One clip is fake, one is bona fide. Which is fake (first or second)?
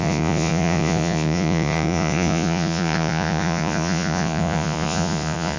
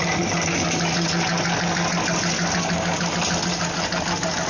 first